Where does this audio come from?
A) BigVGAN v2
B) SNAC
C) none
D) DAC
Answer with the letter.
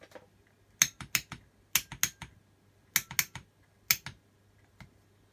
C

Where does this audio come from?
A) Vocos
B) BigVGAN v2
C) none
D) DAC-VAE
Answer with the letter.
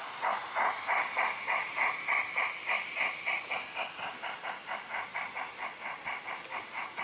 C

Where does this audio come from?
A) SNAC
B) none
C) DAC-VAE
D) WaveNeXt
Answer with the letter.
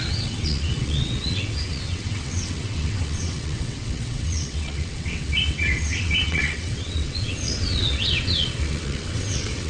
D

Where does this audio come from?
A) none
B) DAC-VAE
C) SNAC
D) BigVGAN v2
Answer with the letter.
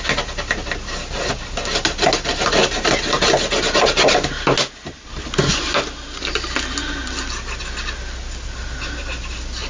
A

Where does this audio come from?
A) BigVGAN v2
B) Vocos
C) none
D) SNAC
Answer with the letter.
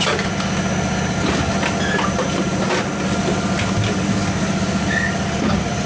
C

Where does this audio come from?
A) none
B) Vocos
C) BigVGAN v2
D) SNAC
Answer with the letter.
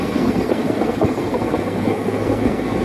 D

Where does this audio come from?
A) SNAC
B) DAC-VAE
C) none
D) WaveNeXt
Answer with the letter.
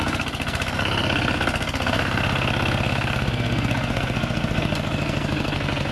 A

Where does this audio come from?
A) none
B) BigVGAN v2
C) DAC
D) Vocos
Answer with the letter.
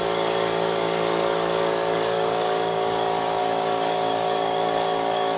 C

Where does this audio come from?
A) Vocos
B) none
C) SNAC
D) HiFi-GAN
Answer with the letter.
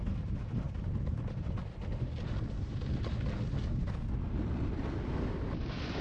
B